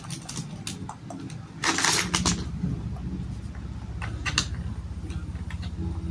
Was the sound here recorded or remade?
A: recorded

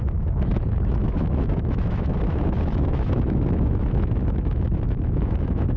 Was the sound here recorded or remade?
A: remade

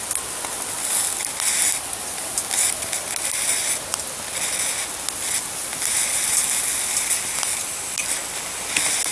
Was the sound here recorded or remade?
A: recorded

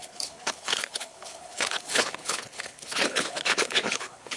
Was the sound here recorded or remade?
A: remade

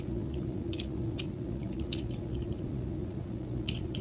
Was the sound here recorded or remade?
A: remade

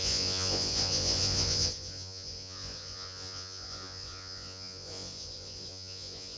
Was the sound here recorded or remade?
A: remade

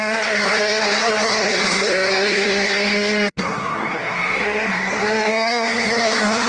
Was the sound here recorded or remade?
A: remade